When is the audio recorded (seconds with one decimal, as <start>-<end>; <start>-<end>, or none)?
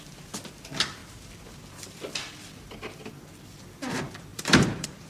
0.0-4.3